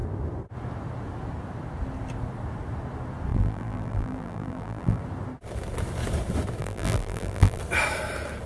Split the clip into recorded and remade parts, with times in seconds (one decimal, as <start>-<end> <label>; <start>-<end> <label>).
0.0-3.3 recorded; 3.3-5.0 remade; 5.0-6.6 recorded; 6.6-7.6 remade; 7.6-8.5 recorded